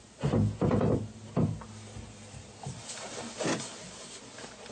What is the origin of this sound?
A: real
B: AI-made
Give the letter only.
A